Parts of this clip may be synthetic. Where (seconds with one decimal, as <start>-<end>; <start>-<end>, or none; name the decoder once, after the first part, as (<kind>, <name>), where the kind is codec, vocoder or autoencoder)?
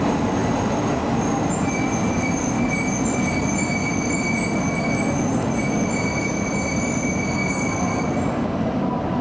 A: none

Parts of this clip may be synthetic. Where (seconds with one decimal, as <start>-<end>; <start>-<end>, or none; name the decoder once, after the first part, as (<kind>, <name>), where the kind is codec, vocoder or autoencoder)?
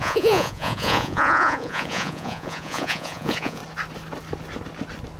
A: 0.0-3.6 (vocoder, Vocos)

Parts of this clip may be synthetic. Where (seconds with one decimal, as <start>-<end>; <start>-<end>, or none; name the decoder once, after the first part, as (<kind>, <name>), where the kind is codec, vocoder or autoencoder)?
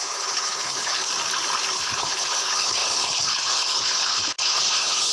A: 0.0-1.1 (codec, HILCodec); 1.7-5.1